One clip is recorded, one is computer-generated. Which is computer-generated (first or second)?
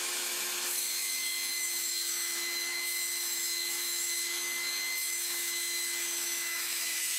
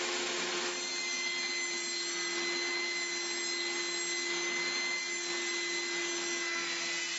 first